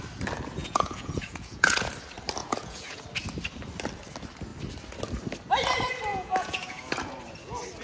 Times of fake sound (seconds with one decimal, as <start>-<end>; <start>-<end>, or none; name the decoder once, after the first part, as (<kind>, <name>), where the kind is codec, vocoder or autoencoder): 0.6-1.9 (vocoder, Vocos); 2.4-3.0; 6.1-7.1